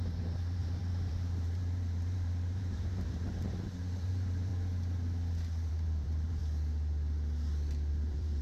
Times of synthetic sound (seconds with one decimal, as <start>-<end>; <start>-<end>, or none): 0.0-4.5; 5.7-6.4; 7.9-8.4